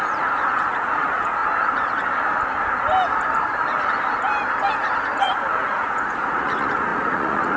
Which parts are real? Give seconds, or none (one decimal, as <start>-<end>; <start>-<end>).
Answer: 1.4-5.2